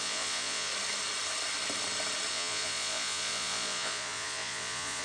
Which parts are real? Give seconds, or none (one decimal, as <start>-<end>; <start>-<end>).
0.7-2.3